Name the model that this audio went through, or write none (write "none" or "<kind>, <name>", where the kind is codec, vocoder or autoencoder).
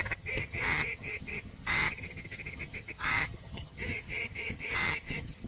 vocoder, HiFi-GAN